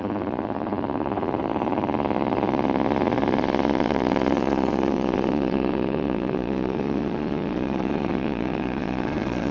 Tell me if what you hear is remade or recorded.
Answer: remade